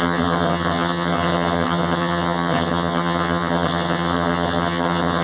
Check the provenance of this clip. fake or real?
fake